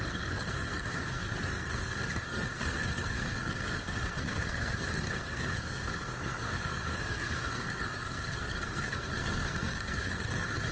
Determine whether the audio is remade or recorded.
remade